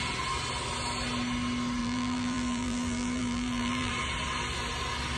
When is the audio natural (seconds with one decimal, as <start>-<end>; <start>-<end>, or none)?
0.0-1.8; 3.9-5.2

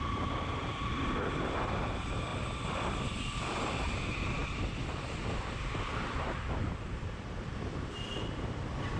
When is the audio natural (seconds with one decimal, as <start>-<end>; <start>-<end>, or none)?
0.0-0.6; 1.2-2.3; 3.4-4.4; 8.1-9.0

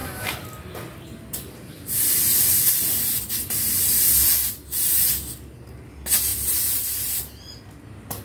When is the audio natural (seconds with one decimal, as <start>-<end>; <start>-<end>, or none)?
4.9-6.3; 7.6-8.2

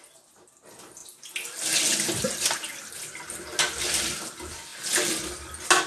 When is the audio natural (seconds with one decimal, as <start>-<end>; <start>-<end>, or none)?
0.0-5.9